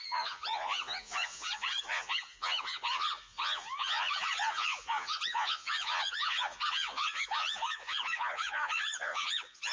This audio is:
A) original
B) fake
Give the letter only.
B